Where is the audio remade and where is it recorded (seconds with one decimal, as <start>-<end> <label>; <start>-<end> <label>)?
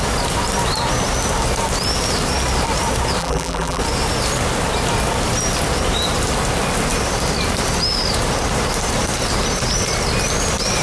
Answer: 0.0-3.2 recorded; 3.2-3.8 remade; 3.8-10.8 recorded